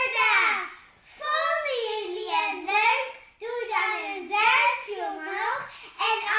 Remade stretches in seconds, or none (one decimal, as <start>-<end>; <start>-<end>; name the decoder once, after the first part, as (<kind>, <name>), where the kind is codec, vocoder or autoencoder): none